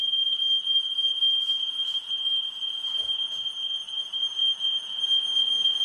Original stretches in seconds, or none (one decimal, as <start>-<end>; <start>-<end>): 0.0-1.5; 5.0-5.8